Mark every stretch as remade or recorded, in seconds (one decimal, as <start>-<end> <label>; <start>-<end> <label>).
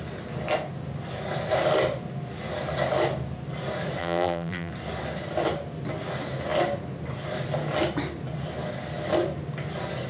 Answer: 0.0-4.0 recorded; 4.0-4.7 remade; 4.7-10.1 recorded